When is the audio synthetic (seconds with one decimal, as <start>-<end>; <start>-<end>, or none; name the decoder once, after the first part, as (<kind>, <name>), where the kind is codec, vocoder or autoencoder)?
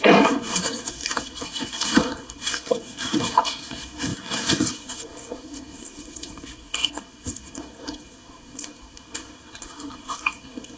0.0-10.8 (codec, SNAC)